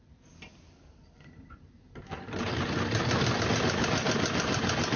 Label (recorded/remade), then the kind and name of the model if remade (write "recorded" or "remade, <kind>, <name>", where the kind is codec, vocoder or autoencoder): recorded